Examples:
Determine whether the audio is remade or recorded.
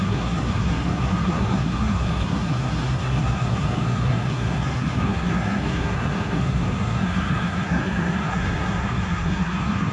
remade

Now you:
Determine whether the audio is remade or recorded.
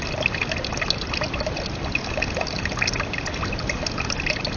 recorded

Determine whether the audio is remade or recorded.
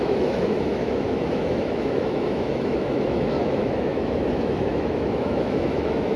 remade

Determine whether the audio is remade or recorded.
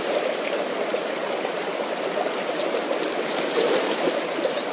recorded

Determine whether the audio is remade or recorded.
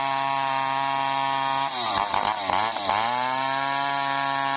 recorded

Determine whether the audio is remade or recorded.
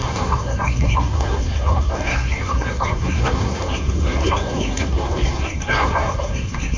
remade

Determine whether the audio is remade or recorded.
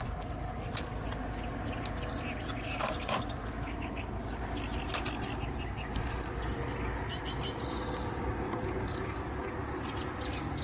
recorded